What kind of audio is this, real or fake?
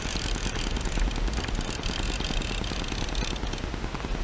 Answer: real